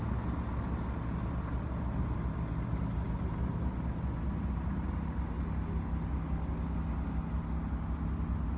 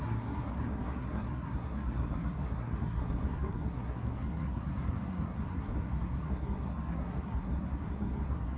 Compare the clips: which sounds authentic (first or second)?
first